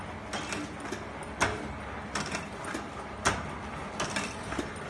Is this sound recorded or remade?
recorded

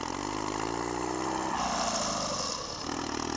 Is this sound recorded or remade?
recorded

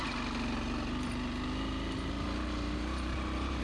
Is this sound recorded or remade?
recorded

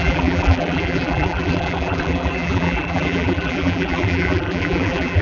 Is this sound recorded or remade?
remade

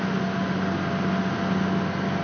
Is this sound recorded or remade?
recorded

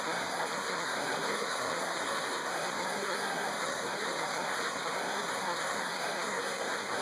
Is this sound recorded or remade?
remade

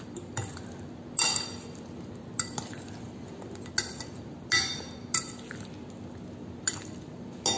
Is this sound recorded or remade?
recorded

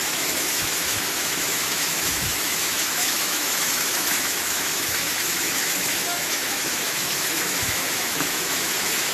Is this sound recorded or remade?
remade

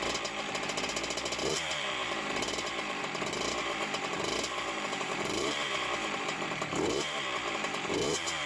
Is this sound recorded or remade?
remade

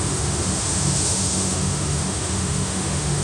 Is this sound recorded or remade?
remade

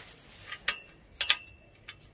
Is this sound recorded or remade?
recorded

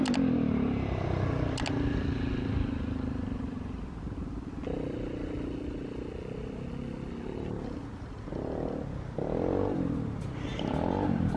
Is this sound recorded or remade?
recorded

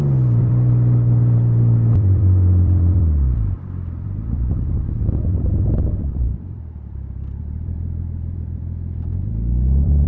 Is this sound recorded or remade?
remade